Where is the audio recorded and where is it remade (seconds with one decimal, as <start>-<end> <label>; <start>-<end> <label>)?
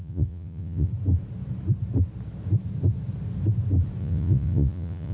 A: 0.0-0.9 remade; 0.9-4.0 recorded; 4.0-5.1 remade